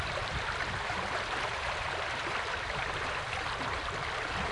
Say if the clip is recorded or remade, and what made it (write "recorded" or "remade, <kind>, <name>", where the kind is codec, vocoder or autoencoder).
remade, vocoder, BigVGAN v2